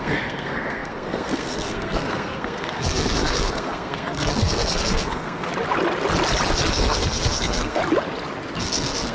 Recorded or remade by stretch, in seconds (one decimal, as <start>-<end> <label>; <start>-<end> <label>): 0.0-5.5 remade; 5.5-6.7 recorded; 6.7-7.8 remade; 7.8-8.6 recorded; 8.6-9.1 remade